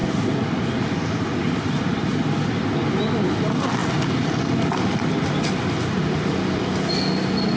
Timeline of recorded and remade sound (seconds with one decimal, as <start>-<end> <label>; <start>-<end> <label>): 0.0-7.6 recorded